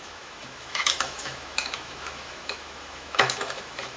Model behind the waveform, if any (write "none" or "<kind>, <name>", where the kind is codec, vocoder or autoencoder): autoencoder, DAC-VAE